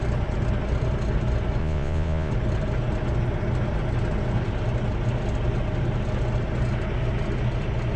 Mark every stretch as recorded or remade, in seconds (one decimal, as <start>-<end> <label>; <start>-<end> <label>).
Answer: 0.0-1.6 recorded; 1.6-2.3 remade; 2.3-8.0 recorded

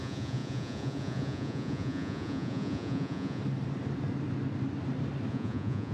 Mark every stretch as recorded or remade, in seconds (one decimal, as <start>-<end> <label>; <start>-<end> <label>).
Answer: 0.0-3.4 remade; 3.4-5.3 recorded; 5.3-5.9 remade

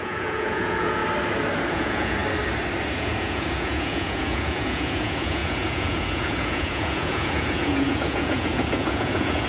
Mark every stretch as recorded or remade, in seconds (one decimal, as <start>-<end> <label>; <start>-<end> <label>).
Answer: 0.0-1.0 remade; 1.0-1.7 recorded; 1.7-2.2 remade; 2.2-2.9 recorded; 2.9-9.5 remade

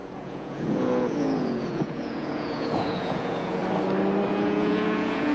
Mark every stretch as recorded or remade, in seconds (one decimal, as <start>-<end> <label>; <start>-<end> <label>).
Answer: 0.0-3.6 remade; 3.6-4.3 recorded; 4.3-5.3 remade

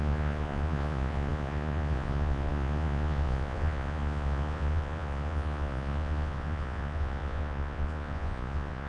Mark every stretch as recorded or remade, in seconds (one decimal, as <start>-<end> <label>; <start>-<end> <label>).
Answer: 0.0-8.9 remade

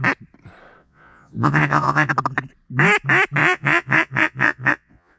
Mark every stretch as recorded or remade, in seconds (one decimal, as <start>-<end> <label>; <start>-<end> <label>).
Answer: 0.0-0.8 recorded; 0.8-2.1 remade; 2.1-3.4 recorded; 3.4-5.2 remade

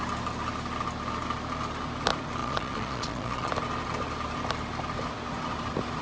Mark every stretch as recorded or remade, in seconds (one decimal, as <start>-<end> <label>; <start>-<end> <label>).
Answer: 0.0-2.4 recorded; 2.4-3.5 remade; 3.5-6.0 recorded